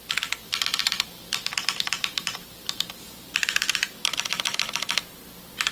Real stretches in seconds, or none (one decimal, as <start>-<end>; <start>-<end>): 0.0-0.8; 4.2-5.7